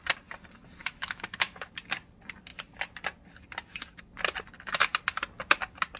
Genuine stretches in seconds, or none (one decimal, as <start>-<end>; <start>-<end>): 0.0-0.8; 1.7-6.0